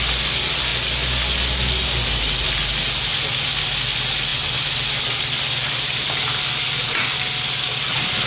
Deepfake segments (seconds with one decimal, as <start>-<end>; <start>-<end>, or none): none